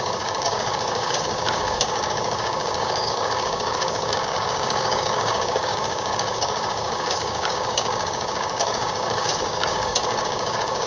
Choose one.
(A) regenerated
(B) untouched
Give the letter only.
A